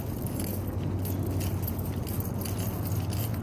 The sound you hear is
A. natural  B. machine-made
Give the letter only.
A